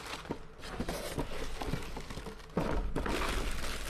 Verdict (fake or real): real